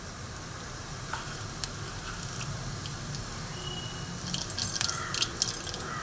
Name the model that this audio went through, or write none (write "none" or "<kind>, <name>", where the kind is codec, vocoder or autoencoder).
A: none